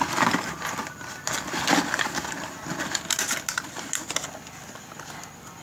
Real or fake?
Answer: real